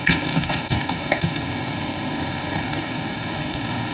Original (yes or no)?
no